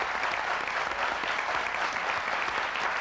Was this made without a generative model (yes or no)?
yes